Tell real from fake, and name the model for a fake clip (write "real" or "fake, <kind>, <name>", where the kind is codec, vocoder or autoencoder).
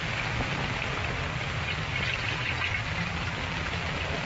real